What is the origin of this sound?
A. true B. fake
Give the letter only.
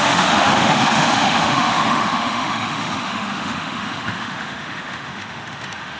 B